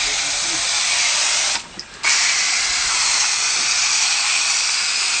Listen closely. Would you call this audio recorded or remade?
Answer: recorded